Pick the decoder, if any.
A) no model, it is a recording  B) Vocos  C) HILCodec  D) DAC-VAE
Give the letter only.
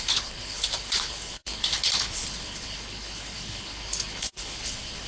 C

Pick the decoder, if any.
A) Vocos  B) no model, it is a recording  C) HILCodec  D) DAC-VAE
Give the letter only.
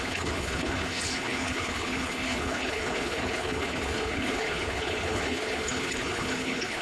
C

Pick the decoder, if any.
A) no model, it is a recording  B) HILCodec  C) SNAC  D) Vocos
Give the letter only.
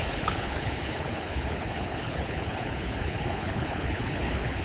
B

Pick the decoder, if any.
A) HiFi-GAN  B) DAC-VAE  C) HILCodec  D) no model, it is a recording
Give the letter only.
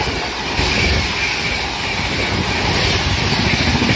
D